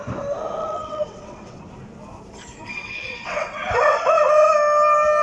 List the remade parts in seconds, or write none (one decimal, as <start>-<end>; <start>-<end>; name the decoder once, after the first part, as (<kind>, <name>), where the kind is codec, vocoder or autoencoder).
0.6-1.6 (vocoder, WaveNeXt); 2.7-4.3